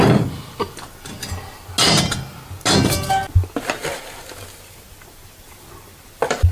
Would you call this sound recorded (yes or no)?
yes